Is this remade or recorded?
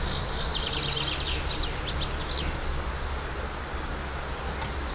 recorded